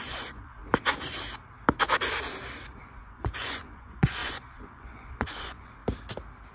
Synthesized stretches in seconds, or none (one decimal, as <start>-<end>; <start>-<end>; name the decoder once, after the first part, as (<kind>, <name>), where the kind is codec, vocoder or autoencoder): 0.0-0.6 (vocoder, Vocos); 2.8-5.8